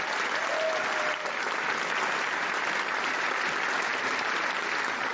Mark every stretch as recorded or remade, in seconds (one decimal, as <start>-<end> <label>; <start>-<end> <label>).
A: 0.0-5.1 recorded